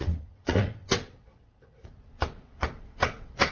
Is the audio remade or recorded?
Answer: remade